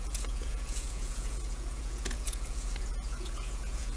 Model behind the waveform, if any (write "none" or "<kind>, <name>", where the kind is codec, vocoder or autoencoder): vocoder, Vocos